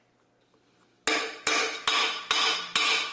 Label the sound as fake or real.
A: real